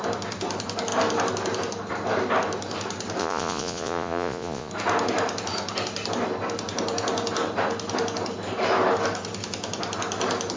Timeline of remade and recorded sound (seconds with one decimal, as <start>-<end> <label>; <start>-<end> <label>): 0.0-3.2 recorded; 3.2-4.7 remade; 4.7-10.6 recorded